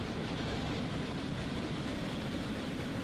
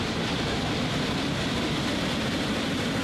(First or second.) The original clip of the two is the second